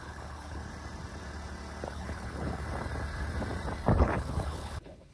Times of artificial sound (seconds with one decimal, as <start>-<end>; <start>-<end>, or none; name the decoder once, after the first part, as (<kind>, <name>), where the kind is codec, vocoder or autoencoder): 0.0-0.6 (codec, HILCodec); 1.9-2.6; 4.0-5.1